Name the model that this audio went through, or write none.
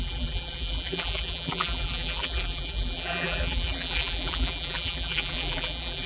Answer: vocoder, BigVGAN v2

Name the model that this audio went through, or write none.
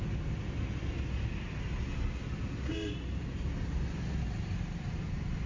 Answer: none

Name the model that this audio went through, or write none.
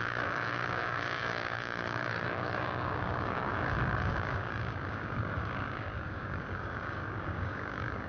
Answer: codec, DAC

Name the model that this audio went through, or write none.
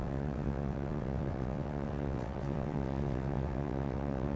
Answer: vocoder, WaveNeXt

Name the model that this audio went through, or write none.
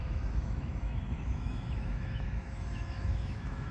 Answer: autoencoder, DAC-VAE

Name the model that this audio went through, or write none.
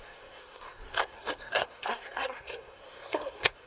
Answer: codec, SNAC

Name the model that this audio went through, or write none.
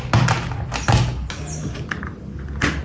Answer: none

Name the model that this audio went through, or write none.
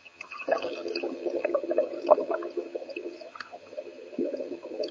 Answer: vocoder, HiFi-GAN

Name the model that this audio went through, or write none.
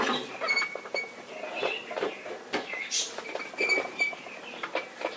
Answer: vocoder, BigVGAN v2